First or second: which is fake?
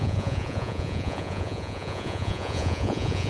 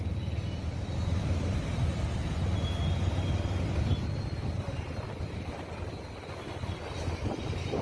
first